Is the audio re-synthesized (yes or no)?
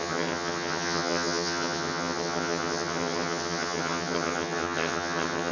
yes